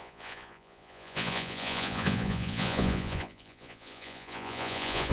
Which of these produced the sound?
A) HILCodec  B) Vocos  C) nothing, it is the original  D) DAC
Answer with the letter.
B